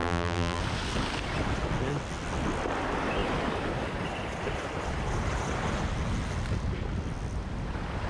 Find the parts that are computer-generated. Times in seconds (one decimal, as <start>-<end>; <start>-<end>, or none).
0.0-0.6